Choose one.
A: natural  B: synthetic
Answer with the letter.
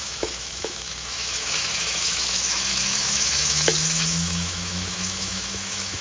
B